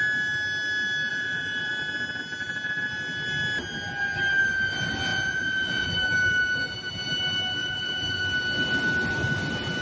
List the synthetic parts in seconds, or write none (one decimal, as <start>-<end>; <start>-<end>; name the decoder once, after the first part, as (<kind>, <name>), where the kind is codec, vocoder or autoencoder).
1.1-1.7 (vocoder, Vocos); 5.1-5.9; 7.6-8.2